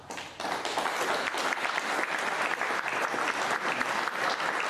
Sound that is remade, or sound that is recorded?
recorded